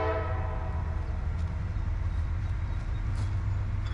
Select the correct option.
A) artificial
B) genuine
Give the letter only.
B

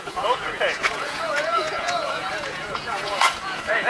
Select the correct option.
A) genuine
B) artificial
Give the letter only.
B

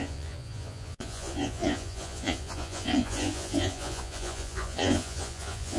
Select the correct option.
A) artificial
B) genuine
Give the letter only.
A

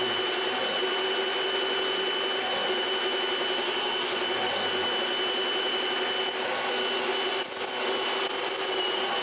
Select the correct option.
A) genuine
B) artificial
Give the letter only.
A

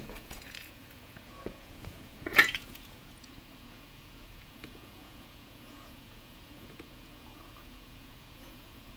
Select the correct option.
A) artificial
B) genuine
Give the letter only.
A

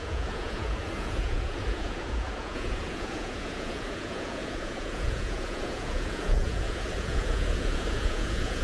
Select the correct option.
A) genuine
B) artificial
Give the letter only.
B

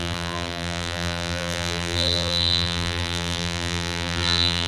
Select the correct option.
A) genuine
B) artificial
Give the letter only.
B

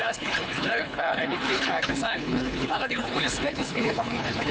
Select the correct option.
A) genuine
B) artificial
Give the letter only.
B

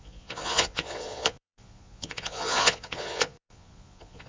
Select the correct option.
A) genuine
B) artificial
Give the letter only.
B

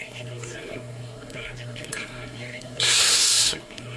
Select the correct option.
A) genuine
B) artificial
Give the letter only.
B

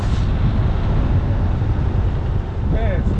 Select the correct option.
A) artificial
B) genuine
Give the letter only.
B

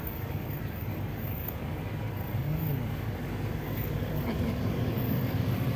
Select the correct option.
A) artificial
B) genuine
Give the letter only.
A